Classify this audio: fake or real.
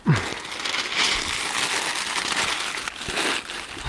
real